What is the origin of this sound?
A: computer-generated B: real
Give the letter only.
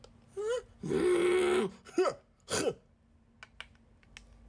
B